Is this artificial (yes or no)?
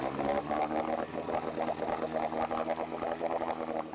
no